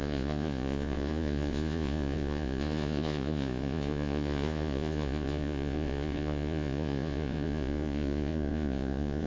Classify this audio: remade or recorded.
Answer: remade